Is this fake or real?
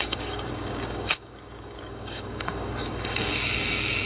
fake